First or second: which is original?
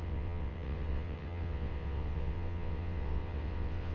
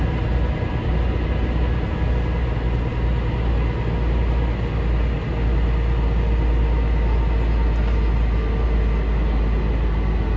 second